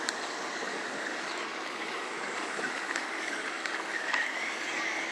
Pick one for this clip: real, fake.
fake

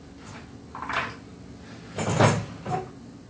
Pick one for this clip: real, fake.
real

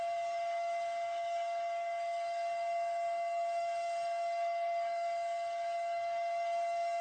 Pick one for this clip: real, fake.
fake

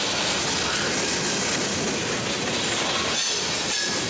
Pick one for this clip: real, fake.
real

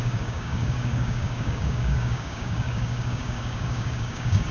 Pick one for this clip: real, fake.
fake